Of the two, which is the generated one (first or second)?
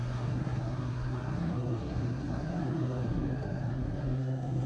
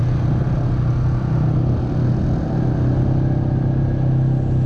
first